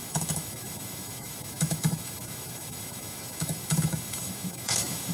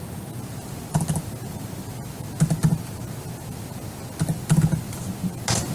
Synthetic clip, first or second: first